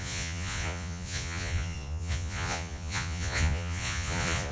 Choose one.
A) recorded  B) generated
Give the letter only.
B